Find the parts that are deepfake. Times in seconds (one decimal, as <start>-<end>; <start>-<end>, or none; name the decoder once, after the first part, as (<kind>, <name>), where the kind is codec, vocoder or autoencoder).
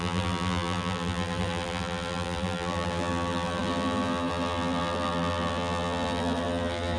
0.0-7.0 (vocoder, BigVGAN v2)